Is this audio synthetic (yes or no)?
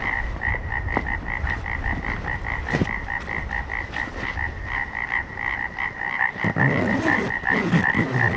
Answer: no